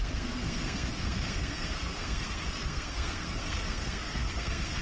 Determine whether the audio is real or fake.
fake